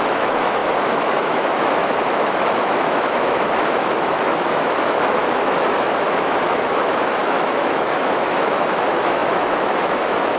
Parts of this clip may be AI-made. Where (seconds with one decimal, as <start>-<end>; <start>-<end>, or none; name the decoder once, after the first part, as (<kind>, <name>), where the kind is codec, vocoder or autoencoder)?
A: 0.0-10.4 (autoencoder, DAC-VAE)